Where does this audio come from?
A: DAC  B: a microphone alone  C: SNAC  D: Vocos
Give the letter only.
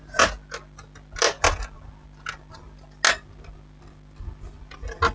B